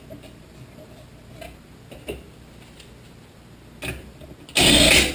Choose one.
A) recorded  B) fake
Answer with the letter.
A